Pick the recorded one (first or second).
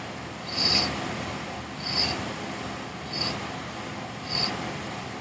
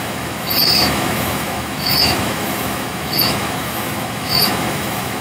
first